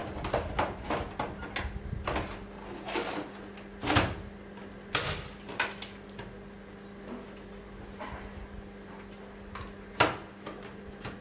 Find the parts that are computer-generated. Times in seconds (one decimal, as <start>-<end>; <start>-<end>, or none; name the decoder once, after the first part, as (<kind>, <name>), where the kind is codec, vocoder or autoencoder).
none